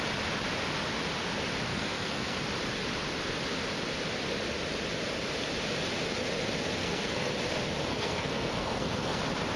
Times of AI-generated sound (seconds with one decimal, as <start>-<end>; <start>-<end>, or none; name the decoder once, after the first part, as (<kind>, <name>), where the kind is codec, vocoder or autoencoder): 1.7-2.4 (codec, SNAC); 6.8-7.3; 7.9-9.2

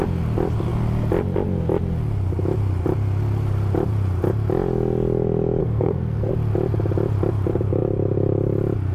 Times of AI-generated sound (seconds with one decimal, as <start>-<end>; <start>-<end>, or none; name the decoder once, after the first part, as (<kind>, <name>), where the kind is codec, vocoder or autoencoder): 5.6-6.3 (codec, SNAC)

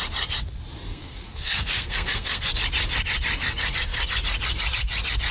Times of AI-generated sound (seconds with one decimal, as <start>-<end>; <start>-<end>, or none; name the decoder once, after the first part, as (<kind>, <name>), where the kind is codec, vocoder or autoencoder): 0.9-2.5 (codec, SNAC)

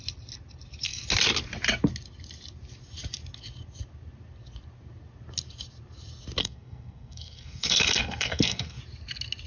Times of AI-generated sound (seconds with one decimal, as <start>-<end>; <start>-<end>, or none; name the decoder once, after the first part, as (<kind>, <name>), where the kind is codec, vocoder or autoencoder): 6.4-8.8 (codec, SNAC)